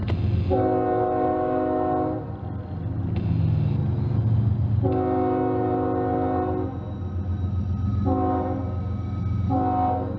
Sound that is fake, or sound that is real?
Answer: real